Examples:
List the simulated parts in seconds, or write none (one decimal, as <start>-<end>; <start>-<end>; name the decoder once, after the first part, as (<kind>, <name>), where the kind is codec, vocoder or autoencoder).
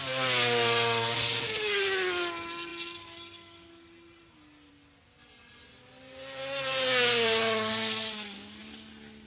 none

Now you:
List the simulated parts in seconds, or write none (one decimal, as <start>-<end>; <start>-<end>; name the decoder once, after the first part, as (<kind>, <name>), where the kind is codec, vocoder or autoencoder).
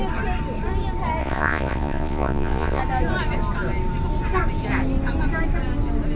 1.2-2.8 (vocoder, Vocos)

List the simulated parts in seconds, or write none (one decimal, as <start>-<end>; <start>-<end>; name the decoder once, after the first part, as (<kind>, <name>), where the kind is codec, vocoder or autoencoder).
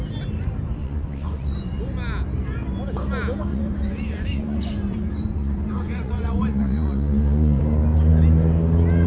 0.8-1.8 (vocoder, Vocos); 3.5-7.6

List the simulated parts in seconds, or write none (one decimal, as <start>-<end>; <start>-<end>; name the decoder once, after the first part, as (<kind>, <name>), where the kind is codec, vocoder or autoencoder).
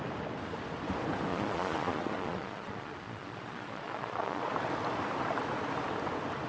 1.3-4.4 (vocoder, Vocos)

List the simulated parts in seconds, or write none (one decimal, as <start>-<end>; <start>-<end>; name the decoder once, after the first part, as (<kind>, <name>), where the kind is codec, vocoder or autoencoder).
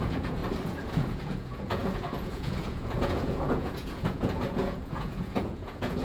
0.0-0.4 (vocoder, Vocos); 0.9-6.0